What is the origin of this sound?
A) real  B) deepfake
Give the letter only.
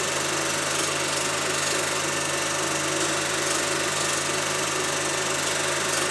A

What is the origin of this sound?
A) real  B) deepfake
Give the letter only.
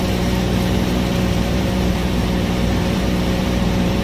B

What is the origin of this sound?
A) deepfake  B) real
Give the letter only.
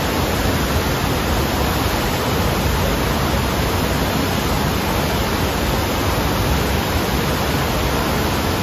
B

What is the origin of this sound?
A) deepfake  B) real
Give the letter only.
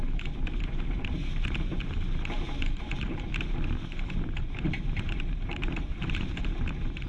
A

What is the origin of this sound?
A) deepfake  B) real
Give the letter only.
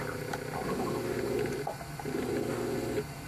B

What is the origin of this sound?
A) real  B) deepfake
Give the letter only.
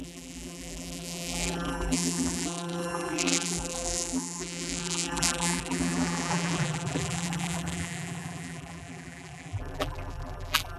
B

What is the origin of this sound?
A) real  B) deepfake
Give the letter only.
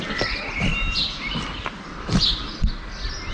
B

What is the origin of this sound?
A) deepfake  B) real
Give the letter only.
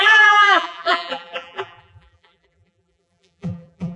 A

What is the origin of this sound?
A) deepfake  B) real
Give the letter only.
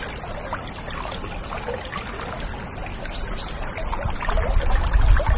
B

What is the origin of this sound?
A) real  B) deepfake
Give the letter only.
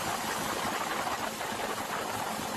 A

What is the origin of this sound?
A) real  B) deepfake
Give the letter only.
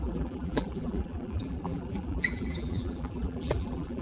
B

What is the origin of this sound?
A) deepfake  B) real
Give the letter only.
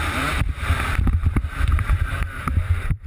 A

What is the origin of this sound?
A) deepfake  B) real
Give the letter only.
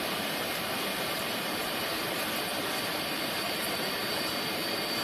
A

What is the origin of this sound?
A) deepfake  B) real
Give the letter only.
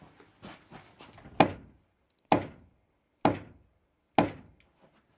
B